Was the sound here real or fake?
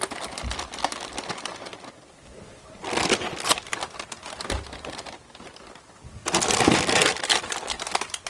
real